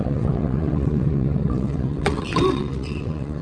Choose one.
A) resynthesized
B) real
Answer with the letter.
A